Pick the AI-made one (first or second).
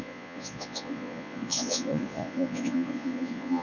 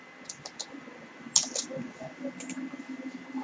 first